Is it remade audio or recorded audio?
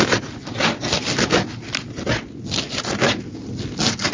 recorded